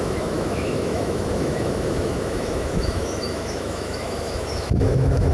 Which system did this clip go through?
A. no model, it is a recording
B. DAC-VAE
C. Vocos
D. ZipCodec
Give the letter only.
B